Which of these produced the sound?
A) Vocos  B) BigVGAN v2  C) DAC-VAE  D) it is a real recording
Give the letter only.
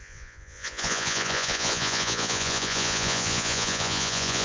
A